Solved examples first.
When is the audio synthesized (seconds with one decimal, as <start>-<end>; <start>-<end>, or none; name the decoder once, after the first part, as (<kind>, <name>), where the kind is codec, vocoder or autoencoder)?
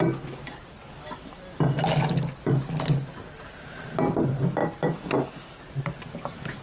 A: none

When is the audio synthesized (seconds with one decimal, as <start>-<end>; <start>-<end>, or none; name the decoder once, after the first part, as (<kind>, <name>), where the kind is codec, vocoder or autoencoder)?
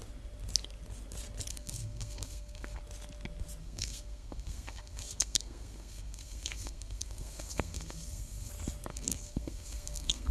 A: 1.5-2.8 (codec, SNAC); 3.6-8.5; 8.9-10.3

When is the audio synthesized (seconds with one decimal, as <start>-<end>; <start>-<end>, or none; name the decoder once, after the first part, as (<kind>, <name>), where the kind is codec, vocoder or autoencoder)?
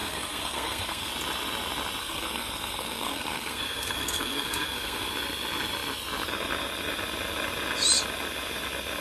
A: 0.0-1.1 (codec, SNAC); 2.0-5.1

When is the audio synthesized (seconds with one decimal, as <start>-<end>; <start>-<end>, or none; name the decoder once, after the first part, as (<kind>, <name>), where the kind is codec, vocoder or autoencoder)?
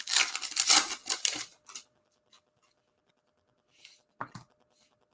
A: none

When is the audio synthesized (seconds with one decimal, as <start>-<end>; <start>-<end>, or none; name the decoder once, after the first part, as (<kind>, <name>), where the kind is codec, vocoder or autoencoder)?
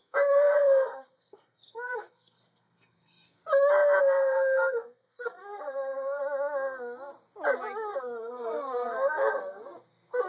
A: 0.0-3.4 (codec, SNAC); 4.0-6.2; 8.0-10.3